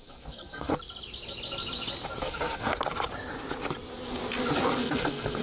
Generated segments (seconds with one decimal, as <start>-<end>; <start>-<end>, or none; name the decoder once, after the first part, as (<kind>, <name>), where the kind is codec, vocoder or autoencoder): 0.0-0.7 (codec, SNAC); 2.2-2.7; 4.8-5.4